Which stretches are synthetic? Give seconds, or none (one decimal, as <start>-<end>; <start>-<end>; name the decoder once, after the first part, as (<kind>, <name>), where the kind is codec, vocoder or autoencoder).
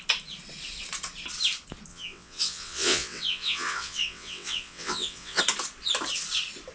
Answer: 1.9-5.4 (vocoder, WaveNeXt)